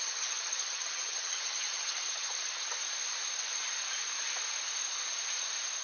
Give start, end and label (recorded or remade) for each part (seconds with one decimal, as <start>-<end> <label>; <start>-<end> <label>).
0.0-2.8 remade; 2.8-5.8 recorded